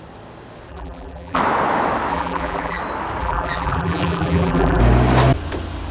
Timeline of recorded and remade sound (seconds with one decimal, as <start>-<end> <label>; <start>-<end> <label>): 0.0-0.7 recorded; 0.7-1.4 remade; 1.4-2.1 recorded; 2.1-2.8 remade; 2.8-3.2 recorded; 3.2-4.8 remade; 4.8-5.9 recorded